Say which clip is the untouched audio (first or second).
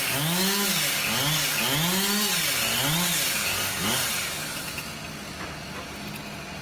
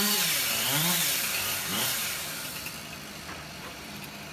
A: first